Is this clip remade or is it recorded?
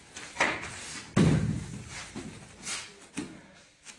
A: recorded